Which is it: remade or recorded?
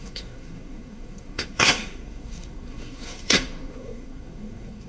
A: remade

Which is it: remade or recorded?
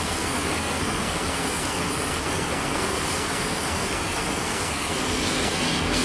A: remade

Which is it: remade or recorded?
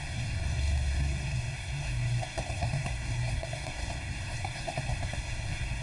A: remade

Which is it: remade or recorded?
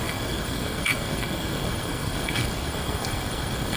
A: remade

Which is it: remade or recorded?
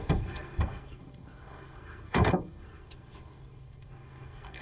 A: remade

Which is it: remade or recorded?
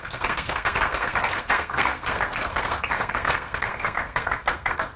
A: remade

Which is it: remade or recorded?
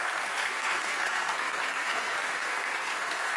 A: remade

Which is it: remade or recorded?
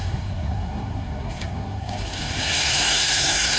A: remade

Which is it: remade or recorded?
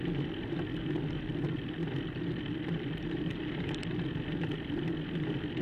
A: recorded